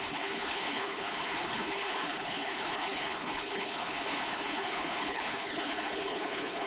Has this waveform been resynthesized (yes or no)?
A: yes